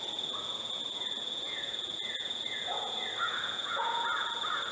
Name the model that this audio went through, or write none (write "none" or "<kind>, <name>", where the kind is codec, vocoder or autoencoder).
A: vocoder, Vocos